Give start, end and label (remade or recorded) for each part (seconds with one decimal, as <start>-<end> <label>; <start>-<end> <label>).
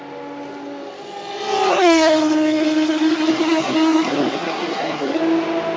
0.0-1.7 recorded; 1.7-5.2 remade; 5.2-5.8 recorded